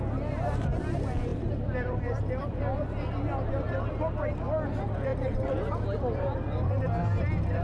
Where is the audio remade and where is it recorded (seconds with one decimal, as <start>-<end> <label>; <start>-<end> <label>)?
0.0-1.3 recorded; 1.3-3.9 remade; 3.9-5.1 recorded; 5.1-6.2 remade; 6.2-7.6 recorded